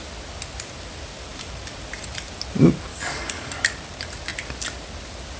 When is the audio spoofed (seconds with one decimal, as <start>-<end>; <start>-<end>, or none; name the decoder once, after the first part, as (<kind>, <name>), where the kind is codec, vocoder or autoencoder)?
2.9-3.5 (codec, DAC)

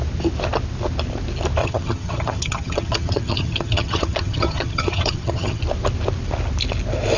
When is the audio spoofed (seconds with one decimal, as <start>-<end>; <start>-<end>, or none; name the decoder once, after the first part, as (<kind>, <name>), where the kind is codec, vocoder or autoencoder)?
1.6-5.6 (vocoder, HiFi-GAN)

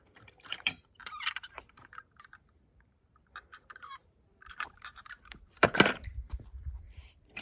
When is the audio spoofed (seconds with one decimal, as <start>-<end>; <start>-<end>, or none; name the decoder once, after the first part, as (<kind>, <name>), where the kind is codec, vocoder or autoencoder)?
0.0-7.4 (vocoder, BigVGAN v2)

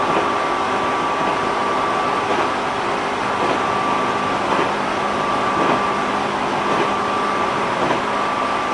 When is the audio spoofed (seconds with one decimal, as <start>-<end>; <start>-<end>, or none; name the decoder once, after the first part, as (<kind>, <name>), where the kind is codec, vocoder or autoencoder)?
0.0-8.7 (vocoder, BigVGAN v2)

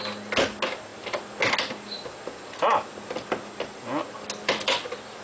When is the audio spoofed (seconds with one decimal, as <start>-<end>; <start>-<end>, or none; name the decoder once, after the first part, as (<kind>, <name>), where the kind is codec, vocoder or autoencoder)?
none

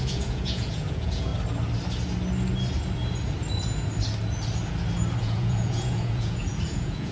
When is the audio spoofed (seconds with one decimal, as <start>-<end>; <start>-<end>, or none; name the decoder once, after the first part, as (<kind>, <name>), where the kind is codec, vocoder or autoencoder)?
0.0-1.3 (vocoder, Vocos); 5.2-7.1

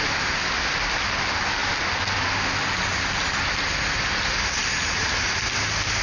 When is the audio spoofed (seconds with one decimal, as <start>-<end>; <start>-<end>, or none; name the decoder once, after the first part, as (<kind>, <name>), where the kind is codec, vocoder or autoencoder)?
none

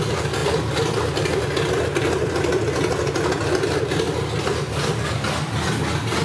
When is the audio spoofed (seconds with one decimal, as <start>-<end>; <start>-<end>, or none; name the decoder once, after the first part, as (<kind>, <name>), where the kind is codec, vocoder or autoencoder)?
none